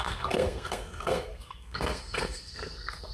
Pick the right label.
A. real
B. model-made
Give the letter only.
B